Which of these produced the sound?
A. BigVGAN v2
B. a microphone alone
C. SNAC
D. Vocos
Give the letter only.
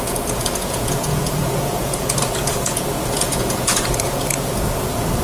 D